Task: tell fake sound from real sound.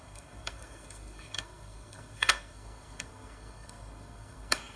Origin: fake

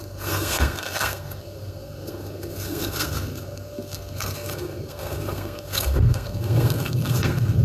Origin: fake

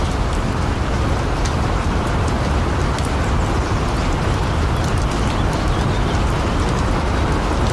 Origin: real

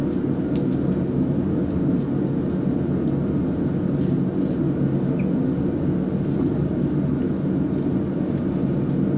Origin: real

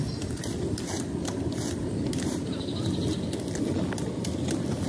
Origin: real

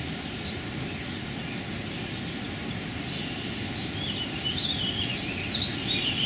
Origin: real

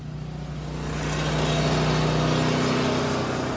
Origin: real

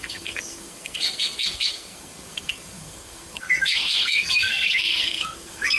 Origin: fake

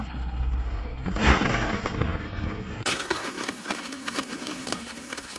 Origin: fake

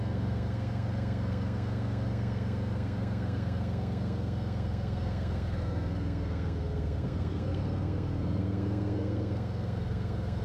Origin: fake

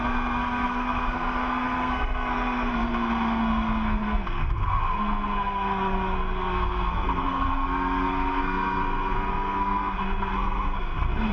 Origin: fake